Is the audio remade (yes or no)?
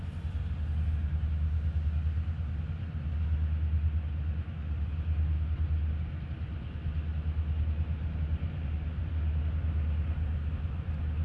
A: no